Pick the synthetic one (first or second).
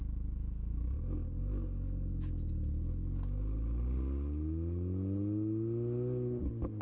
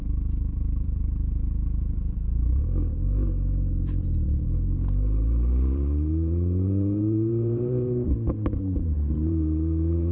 second